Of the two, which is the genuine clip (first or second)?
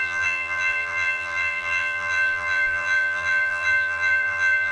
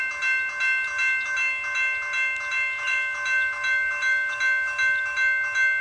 second